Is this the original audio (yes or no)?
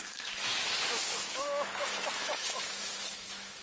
no